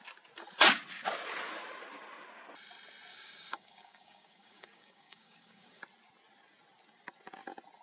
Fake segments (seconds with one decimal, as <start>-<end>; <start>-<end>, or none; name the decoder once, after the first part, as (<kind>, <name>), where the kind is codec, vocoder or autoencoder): 3.1-5.8 (codec, DAC)